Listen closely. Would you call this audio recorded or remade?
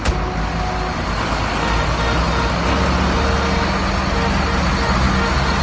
recorded